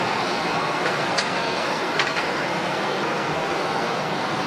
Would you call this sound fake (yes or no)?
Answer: yes